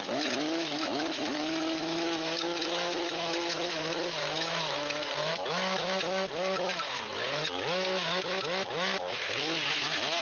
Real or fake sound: fake